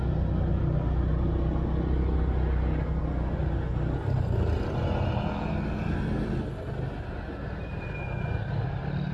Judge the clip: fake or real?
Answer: real